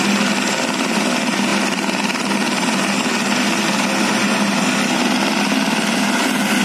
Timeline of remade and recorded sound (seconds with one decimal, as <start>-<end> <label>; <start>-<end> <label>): 0.0-6.6 recorded